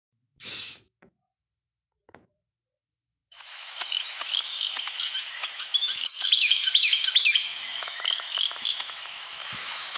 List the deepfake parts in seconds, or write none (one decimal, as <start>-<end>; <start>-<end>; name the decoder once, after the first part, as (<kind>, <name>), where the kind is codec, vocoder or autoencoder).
0.0-10.0 (autoencoder, DAC-VAE)